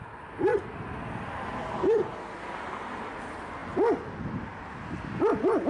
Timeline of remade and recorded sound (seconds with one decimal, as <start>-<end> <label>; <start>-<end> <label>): 0.0-5.7 recorded